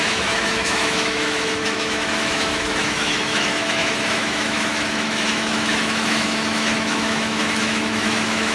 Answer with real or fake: fake